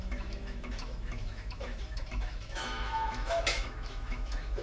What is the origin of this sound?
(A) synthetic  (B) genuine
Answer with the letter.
A